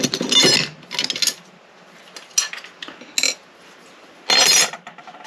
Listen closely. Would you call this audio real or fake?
real